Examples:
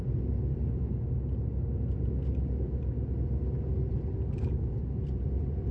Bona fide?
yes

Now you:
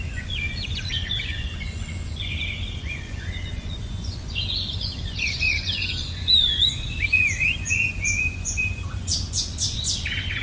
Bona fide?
no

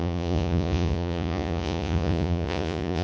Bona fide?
no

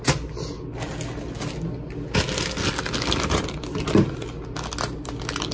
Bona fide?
yes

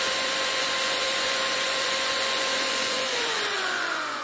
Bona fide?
no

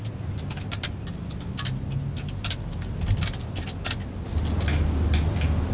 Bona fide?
yes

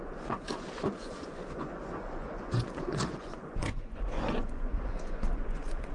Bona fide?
no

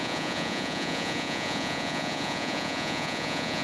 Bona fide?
no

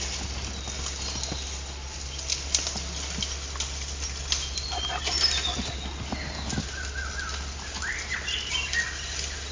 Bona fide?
yes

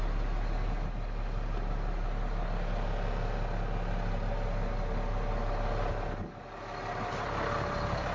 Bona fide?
yes